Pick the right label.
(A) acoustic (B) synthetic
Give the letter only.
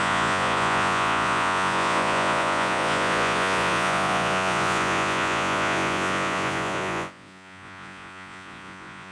B